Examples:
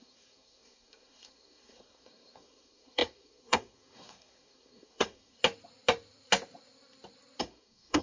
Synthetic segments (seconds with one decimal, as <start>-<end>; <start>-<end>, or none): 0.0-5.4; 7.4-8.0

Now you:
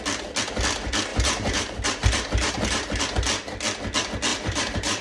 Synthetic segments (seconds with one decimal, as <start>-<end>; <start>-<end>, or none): 1.1-3.0; 4.3-5.0

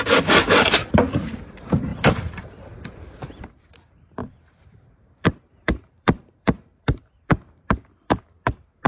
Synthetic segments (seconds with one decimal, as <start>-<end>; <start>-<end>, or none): 1.9-3.4; 4.2-8.2